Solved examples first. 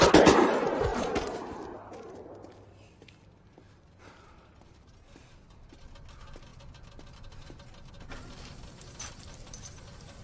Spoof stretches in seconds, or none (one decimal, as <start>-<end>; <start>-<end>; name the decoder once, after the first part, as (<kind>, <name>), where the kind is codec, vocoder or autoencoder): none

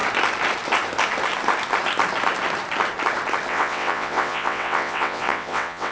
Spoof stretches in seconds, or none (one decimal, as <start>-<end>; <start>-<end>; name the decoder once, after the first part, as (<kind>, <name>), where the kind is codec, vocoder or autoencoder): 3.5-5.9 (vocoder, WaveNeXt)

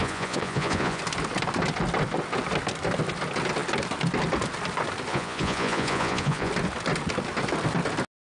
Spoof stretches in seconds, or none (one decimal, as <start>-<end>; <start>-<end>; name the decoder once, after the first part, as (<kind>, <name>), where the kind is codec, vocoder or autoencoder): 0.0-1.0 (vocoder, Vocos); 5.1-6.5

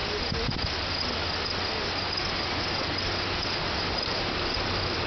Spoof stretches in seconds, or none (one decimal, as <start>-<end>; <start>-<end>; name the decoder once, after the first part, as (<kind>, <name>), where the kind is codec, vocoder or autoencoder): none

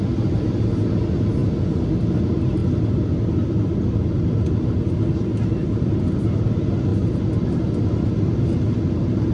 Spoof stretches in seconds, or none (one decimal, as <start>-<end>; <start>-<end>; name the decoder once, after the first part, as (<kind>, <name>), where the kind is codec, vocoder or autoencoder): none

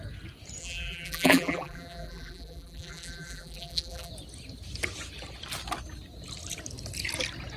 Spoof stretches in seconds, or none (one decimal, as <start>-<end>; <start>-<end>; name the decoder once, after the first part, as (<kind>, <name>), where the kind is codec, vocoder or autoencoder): 0.6-4.1 (vocoder, BigVGAN v2)